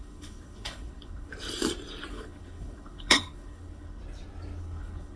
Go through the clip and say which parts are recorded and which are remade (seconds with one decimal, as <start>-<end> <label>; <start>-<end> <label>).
0.0-1.3 remade; 1.3-2.1 recorded; 2.1-4.0 remade; 4.0-4.6 recorded; 4.6-5.2 remade

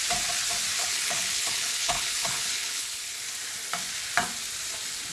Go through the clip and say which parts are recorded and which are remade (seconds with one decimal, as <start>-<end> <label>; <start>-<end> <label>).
0.0-0.8 recorded; 0.8-3.2 remade; 3.2-5.1 recorded

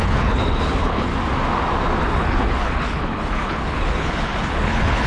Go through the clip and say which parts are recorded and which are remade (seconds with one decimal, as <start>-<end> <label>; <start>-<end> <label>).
0.0-1.1 remade; 1.1-2.0 recorded; 2.0-5.1 remade